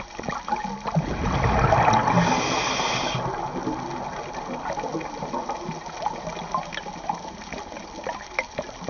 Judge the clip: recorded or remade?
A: recorded